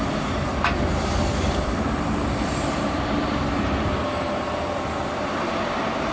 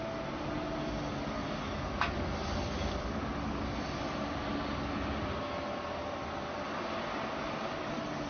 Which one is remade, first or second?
first